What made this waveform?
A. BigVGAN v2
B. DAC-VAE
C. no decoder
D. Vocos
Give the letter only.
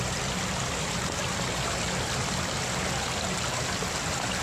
A